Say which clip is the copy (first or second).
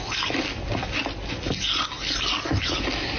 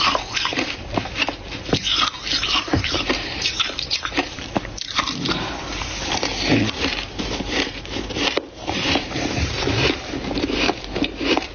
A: second